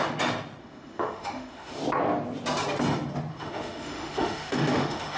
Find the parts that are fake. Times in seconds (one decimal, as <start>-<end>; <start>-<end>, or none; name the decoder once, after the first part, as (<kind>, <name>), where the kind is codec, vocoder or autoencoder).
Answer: 0.6-1.8 (autoencoder, DAC-VAE); 3.3-5.2